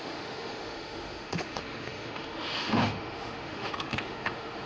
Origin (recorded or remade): remade